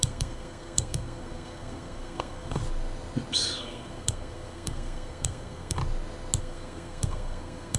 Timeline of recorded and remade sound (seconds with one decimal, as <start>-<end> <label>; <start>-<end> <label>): 0.0-2.6 remade; 2.6-3.6 recorded; 3.6-5.8 remade; 5.8-6.4 recorded; 6.4-7.8 remade